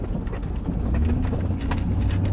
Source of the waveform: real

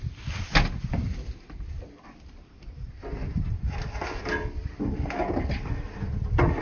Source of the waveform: real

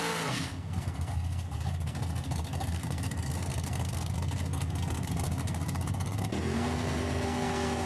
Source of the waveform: fake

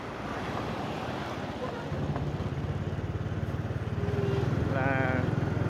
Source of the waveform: real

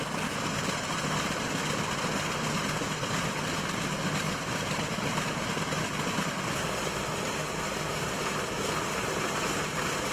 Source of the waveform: real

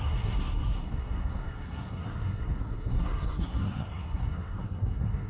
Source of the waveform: fake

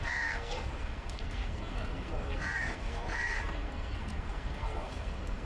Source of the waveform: fake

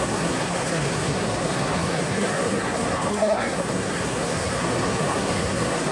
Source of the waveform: fake